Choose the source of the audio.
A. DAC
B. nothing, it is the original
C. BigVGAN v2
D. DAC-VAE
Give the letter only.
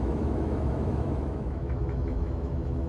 D